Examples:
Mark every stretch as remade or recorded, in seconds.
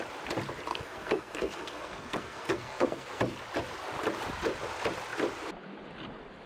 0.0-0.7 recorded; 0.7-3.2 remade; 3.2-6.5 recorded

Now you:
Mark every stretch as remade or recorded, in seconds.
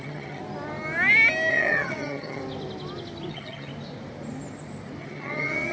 0.0-0.4 remade; 0.4-1.5 recorded; 1.5-2.4 remade; 2.4-3.3 recorded; 3.3-3.7 remade; 3.7-5.0 recorded; 5.0-5.7 remade